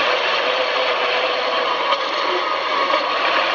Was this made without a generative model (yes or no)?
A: yes